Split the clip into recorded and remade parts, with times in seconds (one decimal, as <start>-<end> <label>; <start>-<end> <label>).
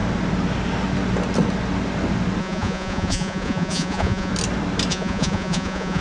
0.0-2.4 recorded; 2.4-4.3 remade; 4.3-4.9 recorded; 4.9-6.0 remade